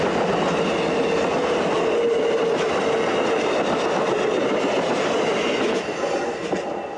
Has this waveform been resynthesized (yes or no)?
no